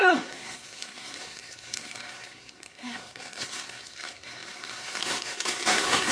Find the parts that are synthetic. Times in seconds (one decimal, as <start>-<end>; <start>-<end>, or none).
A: 0.0-6.1